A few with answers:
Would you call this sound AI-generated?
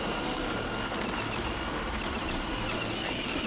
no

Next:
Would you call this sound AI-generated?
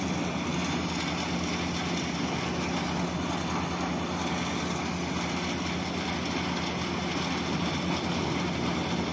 no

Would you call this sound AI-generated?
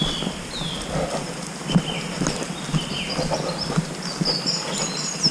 no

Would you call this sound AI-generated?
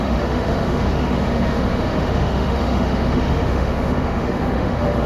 yes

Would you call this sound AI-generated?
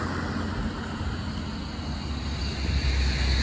no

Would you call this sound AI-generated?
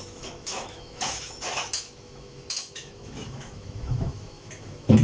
yes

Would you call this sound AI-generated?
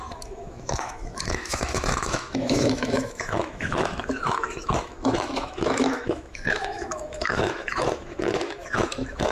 yes